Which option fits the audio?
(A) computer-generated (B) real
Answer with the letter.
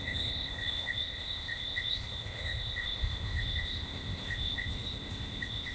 A